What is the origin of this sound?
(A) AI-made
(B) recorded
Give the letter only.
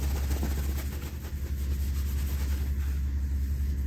B